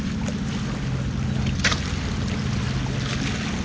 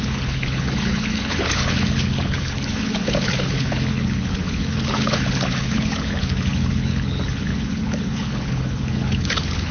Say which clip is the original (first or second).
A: first